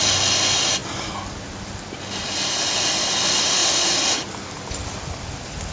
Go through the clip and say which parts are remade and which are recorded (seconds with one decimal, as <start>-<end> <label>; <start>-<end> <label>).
0.0-5.7 recorded